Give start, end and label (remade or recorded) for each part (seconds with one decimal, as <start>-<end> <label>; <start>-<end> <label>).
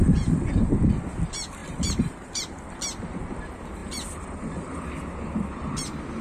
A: 0.0-1.6 recorded; 1.6-2.7 remade; 2.7-3.8 recorded; 3.8-4.8 remade; 4.8-6.2 recorded